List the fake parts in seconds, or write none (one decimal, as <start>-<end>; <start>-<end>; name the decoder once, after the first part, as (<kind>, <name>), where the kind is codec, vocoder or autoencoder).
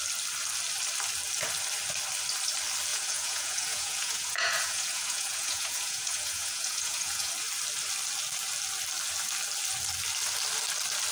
2.9-7.3 (vocoder, Vocos)